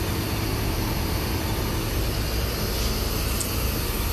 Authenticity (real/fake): real